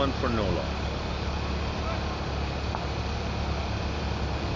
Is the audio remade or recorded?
recorded